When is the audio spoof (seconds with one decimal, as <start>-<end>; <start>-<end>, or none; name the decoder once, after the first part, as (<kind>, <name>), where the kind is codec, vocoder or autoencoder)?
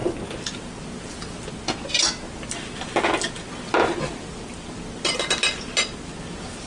none